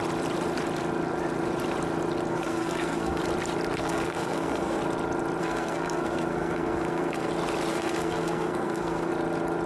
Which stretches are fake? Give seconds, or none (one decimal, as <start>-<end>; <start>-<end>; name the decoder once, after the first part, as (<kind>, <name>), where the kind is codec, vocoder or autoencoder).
2.3-3.2 (codec, SNAC); 3.8-4.8; 5.4-7.3; 7.7-9.1